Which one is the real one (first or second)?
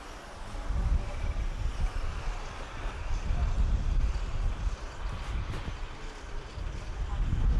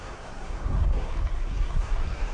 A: first